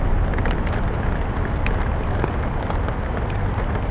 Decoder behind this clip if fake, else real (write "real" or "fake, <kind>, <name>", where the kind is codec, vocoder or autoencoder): real